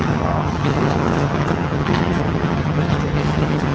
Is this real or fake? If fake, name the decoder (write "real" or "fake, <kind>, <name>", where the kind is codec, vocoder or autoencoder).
fake, vocoder, HiFi-GAN